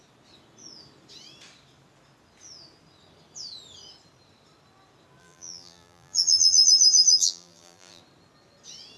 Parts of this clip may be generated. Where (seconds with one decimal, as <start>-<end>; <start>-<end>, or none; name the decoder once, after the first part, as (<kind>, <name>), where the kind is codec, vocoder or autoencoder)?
5.2-8.0 (vocoder, BigVGAN v2)